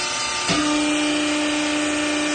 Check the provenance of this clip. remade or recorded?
recorded